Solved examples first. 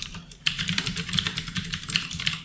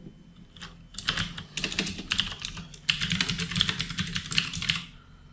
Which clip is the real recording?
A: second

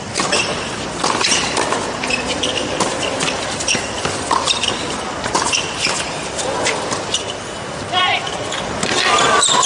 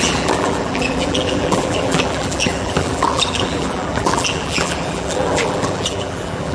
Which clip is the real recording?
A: first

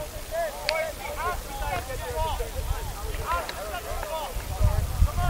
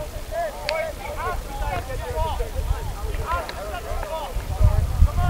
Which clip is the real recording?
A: first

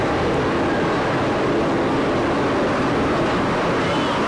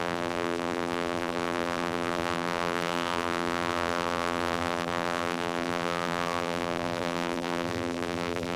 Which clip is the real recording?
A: first